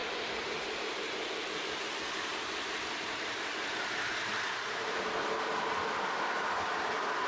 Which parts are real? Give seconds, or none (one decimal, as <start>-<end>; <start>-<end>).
0.0-2.3; 6.7-7.3